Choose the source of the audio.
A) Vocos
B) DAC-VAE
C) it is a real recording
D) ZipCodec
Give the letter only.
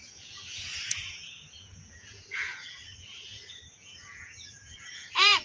A